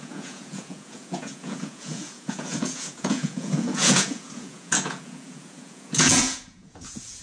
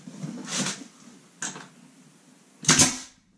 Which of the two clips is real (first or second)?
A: second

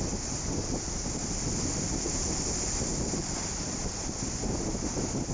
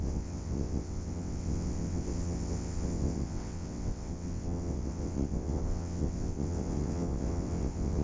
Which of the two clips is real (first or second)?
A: first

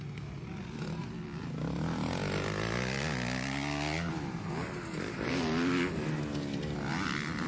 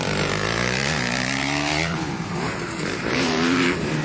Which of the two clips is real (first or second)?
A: first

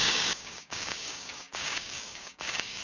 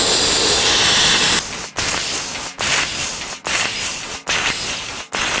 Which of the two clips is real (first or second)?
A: second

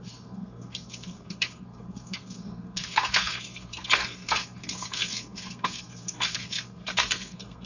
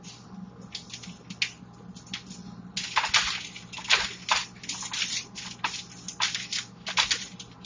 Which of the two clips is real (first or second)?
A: second